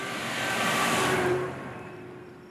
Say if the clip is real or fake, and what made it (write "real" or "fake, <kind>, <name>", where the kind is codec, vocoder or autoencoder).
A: fake, vocoder, BigVGAN v2